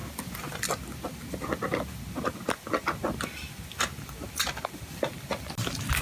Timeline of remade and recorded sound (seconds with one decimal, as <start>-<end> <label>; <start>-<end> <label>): 0.0-6.0 recorded